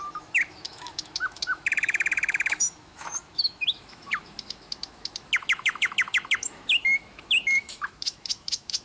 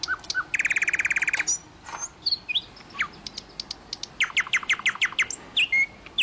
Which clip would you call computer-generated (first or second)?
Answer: first